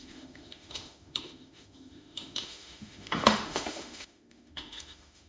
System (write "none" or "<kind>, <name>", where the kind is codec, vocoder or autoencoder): autoencoder, DAC-VAE